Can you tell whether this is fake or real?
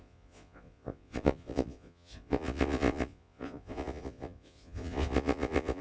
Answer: fake